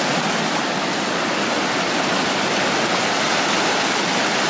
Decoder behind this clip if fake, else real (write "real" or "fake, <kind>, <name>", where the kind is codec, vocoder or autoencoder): real